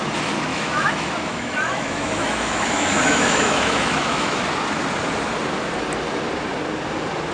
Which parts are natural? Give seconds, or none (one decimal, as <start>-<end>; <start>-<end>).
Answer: 0.0-0.5; 4.4-7.3